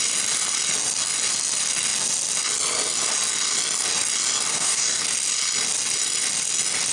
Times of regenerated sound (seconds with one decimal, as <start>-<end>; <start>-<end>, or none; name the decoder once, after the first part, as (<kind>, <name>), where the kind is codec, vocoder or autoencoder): 4.5-5.0 (codec, DAC)